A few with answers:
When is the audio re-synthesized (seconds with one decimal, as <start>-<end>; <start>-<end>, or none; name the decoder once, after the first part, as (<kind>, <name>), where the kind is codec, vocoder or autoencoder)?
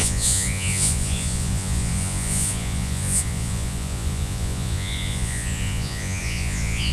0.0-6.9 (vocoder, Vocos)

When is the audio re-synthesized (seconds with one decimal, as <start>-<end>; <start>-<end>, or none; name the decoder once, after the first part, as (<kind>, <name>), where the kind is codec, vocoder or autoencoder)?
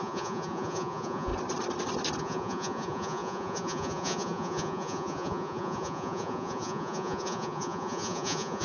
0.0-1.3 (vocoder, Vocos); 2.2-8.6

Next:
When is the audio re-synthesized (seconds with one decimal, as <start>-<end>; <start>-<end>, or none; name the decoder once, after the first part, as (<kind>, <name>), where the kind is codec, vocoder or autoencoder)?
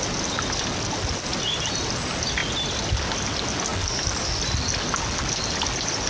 none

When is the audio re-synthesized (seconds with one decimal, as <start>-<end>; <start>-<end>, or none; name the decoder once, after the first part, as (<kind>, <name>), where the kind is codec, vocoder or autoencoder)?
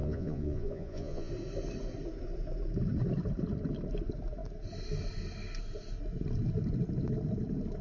0.0-1.3 (vocoder, Vocos)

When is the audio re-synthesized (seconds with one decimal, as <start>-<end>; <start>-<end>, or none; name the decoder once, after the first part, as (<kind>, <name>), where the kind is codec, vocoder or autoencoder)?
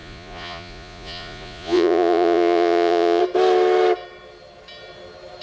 0.0-3.2 (vocoder, Vocos)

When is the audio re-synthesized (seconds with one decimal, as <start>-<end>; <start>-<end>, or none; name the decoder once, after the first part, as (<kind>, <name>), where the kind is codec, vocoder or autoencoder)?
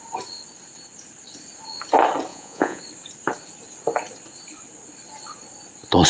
2.3-2.8 (vocoder, Vocos)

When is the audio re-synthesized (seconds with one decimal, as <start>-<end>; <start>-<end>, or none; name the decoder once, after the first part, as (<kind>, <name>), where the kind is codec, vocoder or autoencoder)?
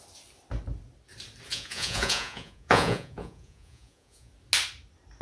1.5-4.3 (vocoder, Vocos)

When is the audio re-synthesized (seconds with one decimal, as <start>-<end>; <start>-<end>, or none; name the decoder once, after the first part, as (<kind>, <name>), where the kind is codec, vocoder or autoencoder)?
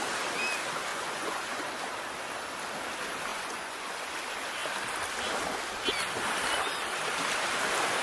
0.9-1.7 (vocoder, Vocos); 3.3-4.1